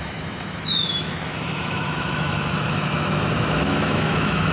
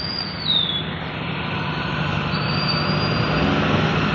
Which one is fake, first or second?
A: first